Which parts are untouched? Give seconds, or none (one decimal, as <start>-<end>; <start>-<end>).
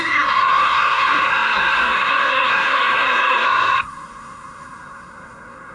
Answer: none